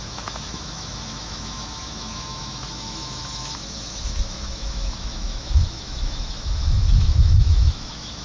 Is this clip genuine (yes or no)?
no